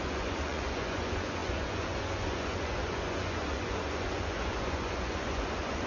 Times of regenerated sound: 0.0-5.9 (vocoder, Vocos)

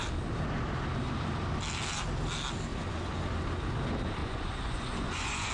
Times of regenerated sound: 2.7-3.2 (vocoder, Vocos); 4.2-5.5

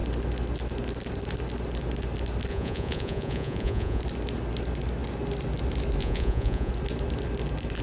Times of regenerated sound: 2.5-4.0 (vocoder, Vocos); 6.0-6.7

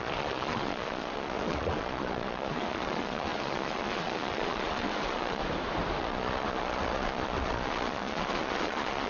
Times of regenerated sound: 0.0-5.4 (vocoder, Vocos); 6.0-9.1

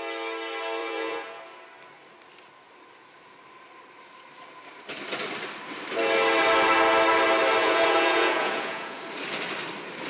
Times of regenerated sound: 0.8-1.4 (vocoder, Vocos); 7.6-9.0